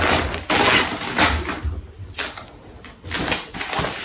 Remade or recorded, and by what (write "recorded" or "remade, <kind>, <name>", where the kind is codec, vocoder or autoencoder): recorded